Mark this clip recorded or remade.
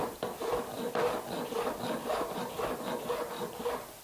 remade